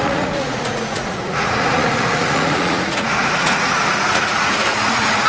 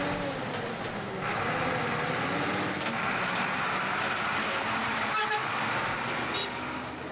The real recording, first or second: second